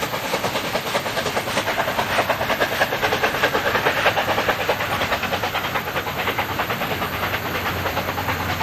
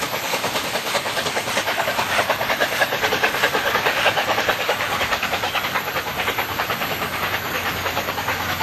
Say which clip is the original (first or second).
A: first